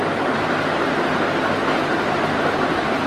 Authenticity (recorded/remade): recorded